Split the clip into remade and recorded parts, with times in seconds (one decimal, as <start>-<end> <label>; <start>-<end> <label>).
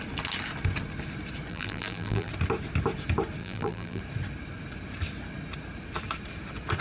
0.0-1.5 recorded; 1.5-2.3 remade; 2.3-3.4 recorded; 3.4-4.0 remade; 4.0-6.8 recorded